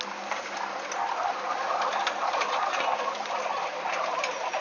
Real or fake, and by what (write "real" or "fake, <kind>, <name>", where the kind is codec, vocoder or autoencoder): real